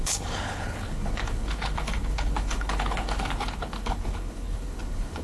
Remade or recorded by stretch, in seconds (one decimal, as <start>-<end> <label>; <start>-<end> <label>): 0.0-5.2 remade